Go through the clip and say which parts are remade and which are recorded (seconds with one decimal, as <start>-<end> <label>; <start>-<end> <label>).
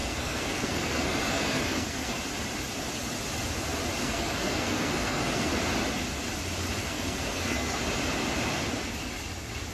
0.0-2.2 remade; 2.2-4.0 recorded; 4.0-5.5 remade; 5.5-6.8 recorded; 6.8-7.8 remade; 7.8-9.7 recorded